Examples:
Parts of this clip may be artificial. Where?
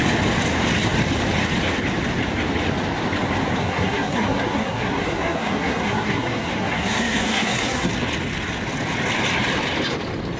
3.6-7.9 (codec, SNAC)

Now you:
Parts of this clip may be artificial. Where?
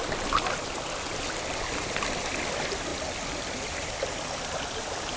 none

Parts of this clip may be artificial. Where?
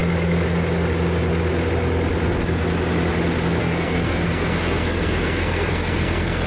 3.6-6.5 (codec, SNAC)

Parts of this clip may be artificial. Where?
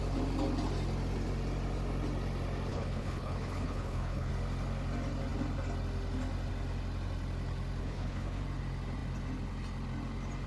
2.7-4.3 (codec, HILCodec); 7.8-8.4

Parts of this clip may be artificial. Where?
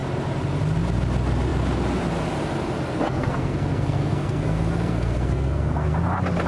2.9-6.0 (codec, SNAC)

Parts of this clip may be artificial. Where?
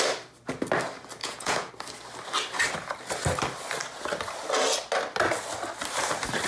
1.2-1.7 (vocoder, Vocos)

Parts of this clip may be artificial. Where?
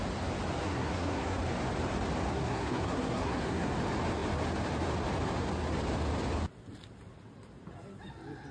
0.6-1.4 (codec, SNAC); 2.3-3.7